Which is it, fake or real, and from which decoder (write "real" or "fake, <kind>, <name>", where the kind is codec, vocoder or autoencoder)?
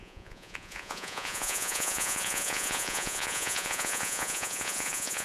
fake, vocoder, Vocos